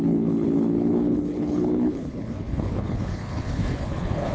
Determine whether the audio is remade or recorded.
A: remade